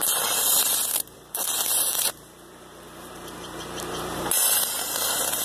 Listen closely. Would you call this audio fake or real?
fake